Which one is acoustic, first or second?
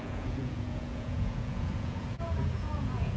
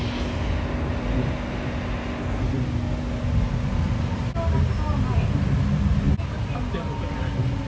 second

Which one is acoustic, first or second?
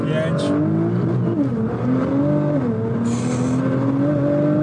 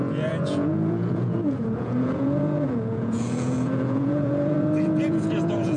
first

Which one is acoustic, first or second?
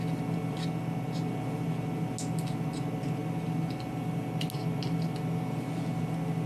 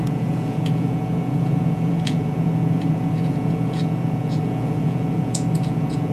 first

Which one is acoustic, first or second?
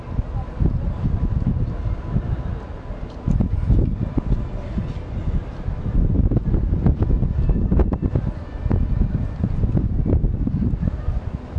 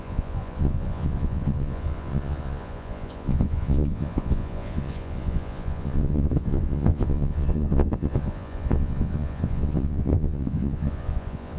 first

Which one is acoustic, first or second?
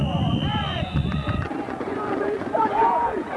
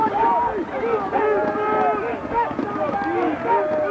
second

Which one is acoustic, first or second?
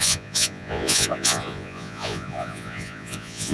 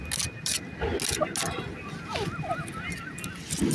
second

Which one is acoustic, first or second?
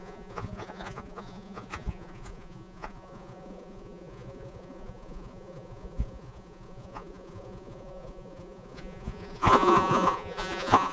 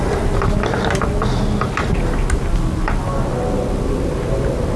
second